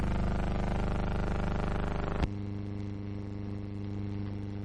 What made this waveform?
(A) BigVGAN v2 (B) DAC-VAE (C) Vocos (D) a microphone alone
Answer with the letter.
D